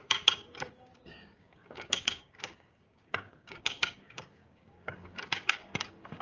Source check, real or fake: fake